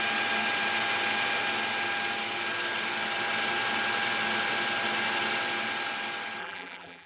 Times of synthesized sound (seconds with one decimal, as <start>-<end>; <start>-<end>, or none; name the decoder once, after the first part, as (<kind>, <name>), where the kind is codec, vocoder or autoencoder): 6.4-7.1 (vocoder, BigVGAN v2)